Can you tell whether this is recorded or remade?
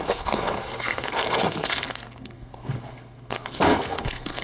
remade